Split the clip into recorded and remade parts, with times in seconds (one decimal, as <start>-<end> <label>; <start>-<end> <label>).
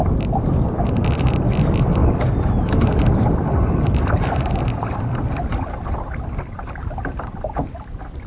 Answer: 0.0-2.0 remade; 2.0-2.8 recorded; 2.8-8.3 remade